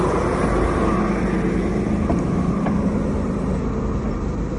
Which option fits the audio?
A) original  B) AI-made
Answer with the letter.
A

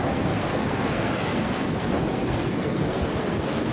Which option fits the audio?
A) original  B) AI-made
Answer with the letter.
B